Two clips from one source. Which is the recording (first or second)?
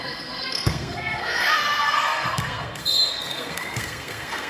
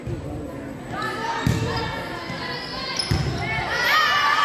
second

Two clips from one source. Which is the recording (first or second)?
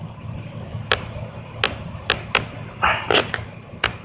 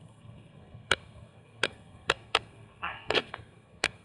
first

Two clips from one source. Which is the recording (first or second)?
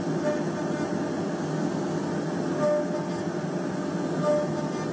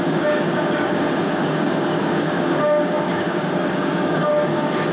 first